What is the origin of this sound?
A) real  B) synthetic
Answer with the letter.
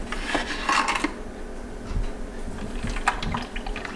A